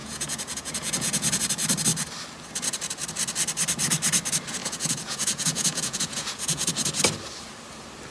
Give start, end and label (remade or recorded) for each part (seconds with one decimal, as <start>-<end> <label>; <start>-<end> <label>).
0.0-1.4 remade; 1.4-4.6 recorded; 4.6-6.7 remade; 6.7-8.1 recorded